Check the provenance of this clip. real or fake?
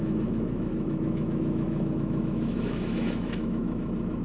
fake